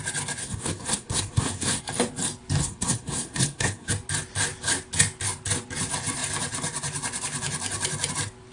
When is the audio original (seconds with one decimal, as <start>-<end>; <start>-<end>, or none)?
0.0-0.4; 1.8-2.6; 3.9-8.5